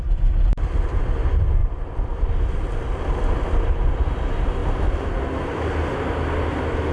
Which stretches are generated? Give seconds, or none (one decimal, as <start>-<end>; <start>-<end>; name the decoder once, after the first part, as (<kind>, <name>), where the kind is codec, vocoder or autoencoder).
none